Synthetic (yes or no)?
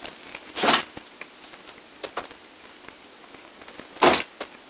no